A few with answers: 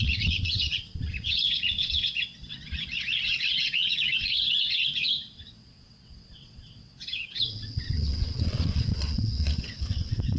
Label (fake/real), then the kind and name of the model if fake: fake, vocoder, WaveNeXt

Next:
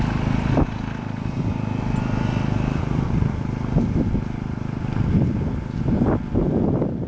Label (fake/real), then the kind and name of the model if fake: real